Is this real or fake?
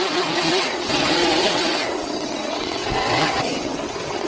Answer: fake